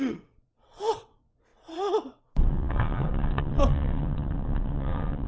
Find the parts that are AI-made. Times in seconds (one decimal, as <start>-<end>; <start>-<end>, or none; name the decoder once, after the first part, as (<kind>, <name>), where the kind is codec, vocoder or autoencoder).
0.0-5.3 (vocoder, WaveNeXt)